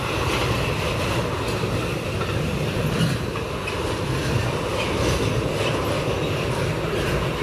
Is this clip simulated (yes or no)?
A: no